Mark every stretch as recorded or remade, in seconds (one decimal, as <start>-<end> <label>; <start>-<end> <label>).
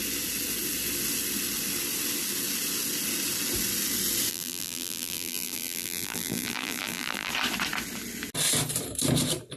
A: 0.0-4.3 recorded; 4.3-7.3 remade; 7.3-9.6 recorded